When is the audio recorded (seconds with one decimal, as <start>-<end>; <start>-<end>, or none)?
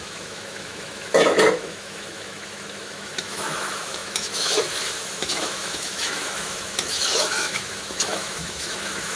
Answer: none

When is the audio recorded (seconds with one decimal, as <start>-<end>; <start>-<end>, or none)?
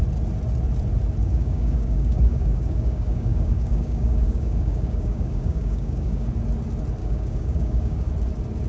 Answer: 0.0-1.2; 6.3-7.0; 8.1-8.7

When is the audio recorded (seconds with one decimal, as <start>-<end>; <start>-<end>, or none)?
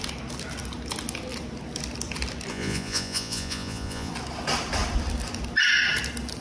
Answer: 0.0-2.5; 4.1-6.4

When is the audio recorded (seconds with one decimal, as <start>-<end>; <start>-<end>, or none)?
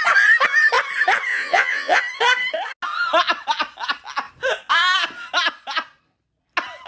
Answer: 0.0-1.3; 2.0-6.9